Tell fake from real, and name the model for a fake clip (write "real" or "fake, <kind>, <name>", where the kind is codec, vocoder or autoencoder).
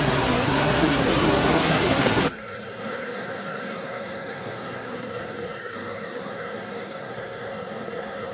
fake, codec, SNAC